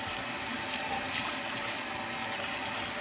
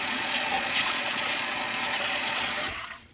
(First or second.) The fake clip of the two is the second